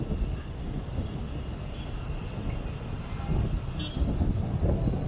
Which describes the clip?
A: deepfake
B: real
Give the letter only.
B